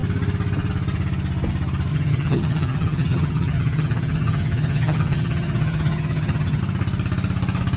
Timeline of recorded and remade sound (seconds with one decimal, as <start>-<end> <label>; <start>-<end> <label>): 0.0-1.9 recorded; 1.9-6.6 remade; 6.6-7.8 recorded